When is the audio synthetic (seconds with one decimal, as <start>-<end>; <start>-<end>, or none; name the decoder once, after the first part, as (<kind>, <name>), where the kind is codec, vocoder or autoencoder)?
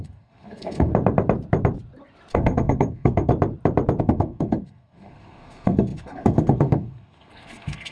0.0-0.9 (codec, SNAC); 2.3-3.3; 4.0-7.9